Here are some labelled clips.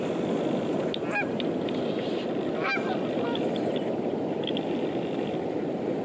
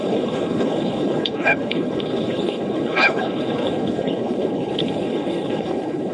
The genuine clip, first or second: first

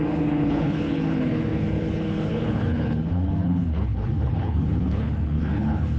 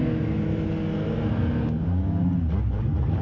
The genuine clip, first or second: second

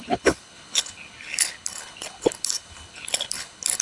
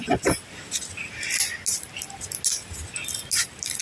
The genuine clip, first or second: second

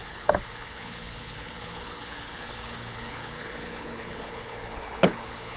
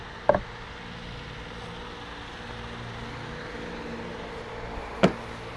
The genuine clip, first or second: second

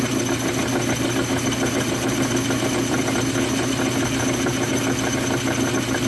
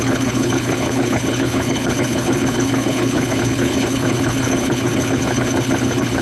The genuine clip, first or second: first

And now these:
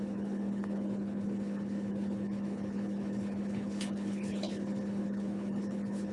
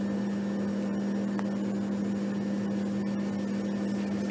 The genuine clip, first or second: second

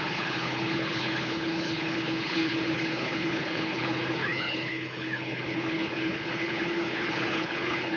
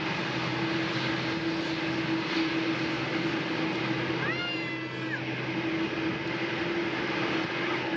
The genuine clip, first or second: second